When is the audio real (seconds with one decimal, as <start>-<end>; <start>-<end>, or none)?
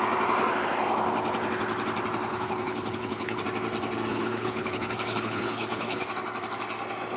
0.0-2.3; 3.4-4.1; 6.1-7.2